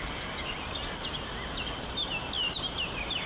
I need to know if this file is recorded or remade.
recorded